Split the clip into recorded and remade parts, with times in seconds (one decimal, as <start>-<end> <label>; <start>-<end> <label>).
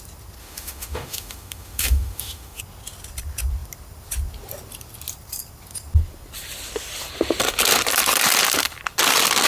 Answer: 0.0-0.4 recorded; 0.4-2.6 remade; 2.6-9.5 recorded